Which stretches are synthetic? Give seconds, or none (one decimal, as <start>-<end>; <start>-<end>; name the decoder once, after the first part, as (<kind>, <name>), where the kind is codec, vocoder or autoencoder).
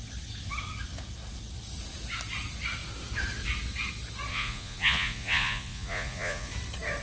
4.3-6.5 (vocoder, Vocos)